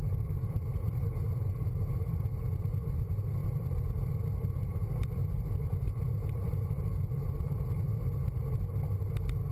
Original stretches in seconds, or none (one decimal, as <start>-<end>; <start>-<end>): 2.4-3.4; 4.1-4.6; 8.6-9.5